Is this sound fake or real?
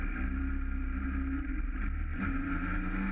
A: real